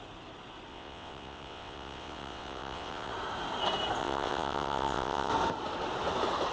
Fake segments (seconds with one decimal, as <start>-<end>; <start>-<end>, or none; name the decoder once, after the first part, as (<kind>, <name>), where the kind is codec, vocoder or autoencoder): 0.7-3.1 (vocoder, WaveNeXt); 4.0-5.3